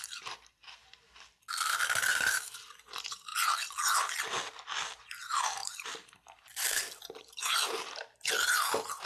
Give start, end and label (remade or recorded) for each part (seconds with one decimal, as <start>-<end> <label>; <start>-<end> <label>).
0.0-3.3 remade; 3.3-5.1 recorded; 5.1-9.1 remade